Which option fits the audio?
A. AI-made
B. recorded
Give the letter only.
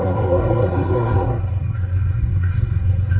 A